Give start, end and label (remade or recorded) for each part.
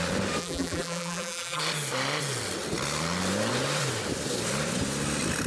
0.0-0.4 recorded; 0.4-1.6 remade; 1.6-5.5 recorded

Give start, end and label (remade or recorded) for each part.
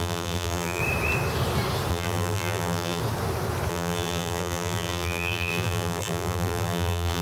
0.0-0.8 remade; 0.8-1.9 recorded; 1.9-3.0 remade; 3.0-3.7 recorded; 3.7-7.2 remade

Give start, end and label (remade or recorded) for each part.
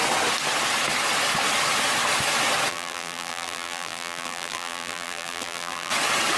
0.0-2.7 recorded; 2.7-5.9 remade; 5.9-6.4 recorded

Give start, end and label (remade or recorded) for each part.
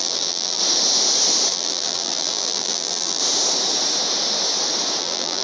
0.0-0.6 remade; 0.6-1.5 recorded; 1.5-3.2 remade; 3.2-5.0 recorded; 5.0-5.4 remade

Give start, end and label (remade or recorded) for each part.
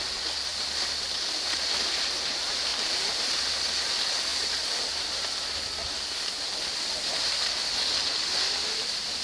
0.0-0.5 recorded; 0.5-1.6 remade; 1.6-2.7 recorded; 2.7-3.3 remade; 3.3-9.2 recorded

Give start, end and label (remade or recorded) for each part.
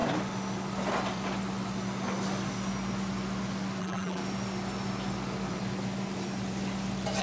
0.0-3.8 recorded; 3.8-4.2 remade; 4.2-7.2 recorded